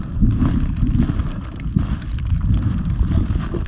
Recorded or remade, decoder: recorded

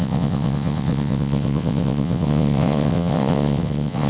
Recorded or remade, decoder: remade, vocoder, WaveNeXt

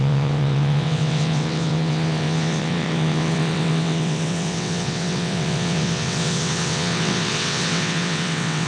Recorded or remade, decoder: remade, vocoder, WaveNeXt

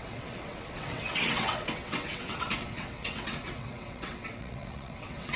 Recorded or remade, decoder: remade, vocoder, WaveNeXt